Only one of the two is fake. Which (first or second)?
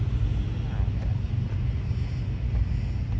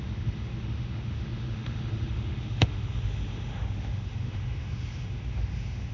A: second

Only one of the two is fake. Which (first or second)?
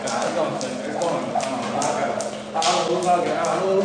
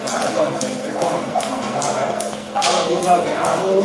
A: second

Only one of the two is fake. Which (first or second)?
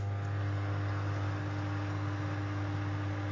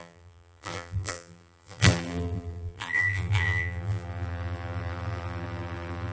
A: second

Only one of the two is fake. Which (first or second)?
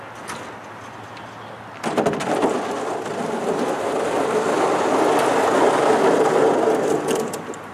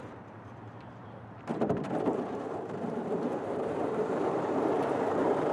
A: second